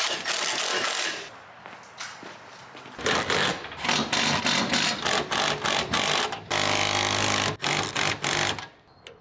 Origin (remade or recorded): recorded